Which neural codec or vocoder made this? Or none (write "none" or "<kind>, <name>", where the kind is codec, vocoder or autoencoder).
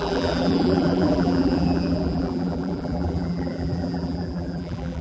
vocoder, BigVGAN v2